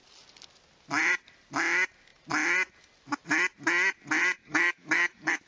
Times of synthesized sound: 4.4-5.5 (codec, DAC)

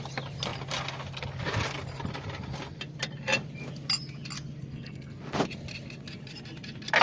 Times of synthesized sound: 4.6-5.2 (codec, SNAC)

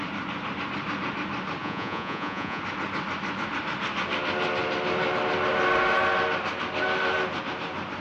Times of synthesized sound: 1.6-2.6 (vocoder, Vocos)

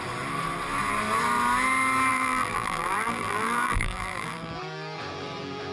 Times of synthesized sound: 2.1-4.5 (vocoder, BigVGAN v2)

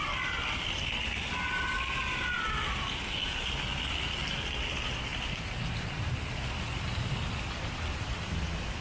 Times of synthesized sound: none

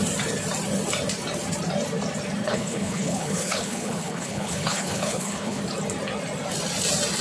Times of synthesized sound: 2.4-5.6 (codec, HILCodec)

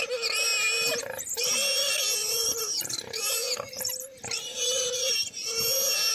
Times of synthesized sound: 2.2-5.6 (vocoder, BigVGAN v2)